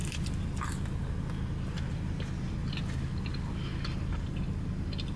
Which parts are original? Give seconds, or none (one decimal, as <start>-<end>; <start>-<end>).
0.0-5.2